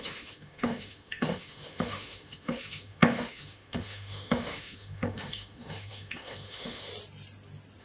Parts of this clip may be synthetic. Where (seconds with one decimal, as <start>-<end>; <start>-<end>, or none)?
0.0-6.9